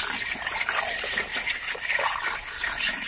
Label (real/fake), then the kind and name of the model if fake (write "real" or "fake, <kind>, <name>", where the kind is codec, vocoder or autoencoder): real